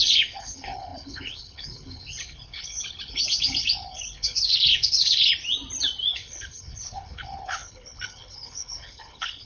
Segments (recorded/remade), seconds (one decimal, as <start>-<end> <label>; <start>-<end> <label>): 0.0-5.3 remade; 5.3-6.1 recorded; 6.1-9.5 remade